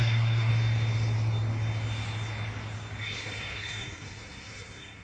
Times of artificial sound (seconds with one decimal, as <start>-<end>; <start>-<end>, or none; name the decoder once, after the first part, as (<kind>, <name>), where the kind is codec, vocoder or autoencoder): 0.0-0.5 (codec, SNAC); 3.0-5.0